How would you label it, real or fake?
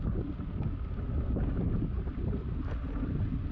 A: real